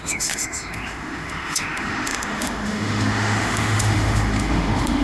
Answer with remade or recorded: remade